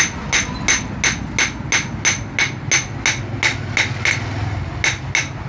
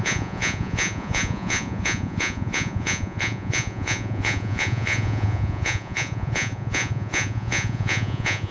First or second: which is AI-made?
second